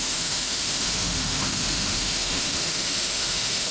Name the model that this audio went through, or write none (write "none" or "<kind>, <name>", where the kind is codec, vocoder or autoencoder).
autoencoder, DAC-VAE